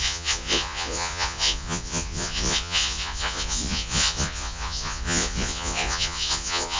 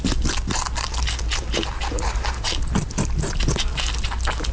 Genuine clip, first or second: second